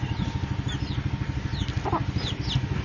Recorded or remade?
recorded